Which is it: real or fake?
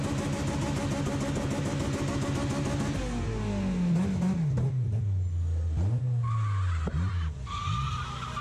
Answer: real